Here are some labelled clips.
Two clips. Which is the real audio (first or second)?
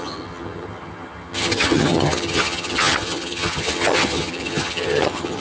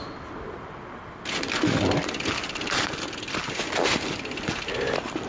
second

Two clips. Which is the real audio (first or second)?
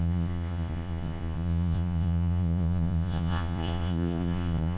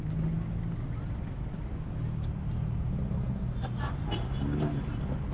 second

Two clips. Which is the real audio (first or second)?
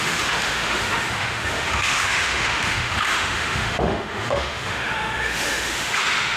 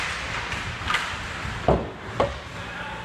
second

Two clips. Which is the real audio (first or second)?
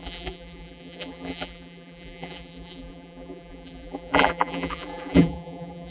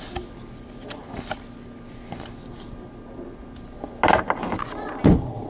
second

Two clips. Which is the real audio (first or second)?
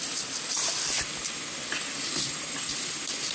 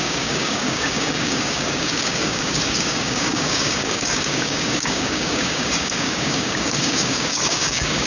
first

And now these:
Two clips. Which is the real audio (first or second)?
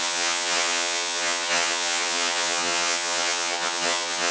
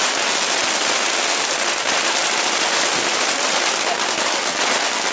second